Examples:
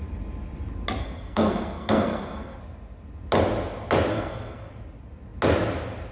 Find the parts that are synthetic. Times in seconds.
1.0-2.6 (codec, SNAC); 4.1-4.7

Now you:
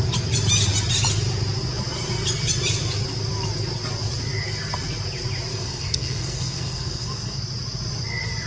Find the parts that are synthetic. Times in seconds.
5.5-7.4 (codec, SNAC)